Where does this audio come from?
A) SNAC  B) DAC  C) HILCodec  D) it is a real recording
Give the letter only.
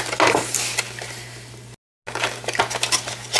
D